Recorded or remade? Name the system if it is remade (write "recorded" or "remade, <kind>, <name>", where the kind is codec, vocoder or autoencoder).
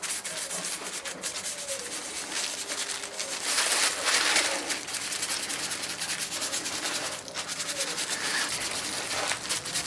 recorded